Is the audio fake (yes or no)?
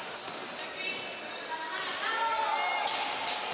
no